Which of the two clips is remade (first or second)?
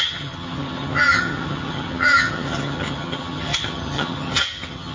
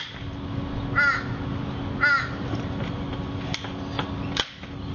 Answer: first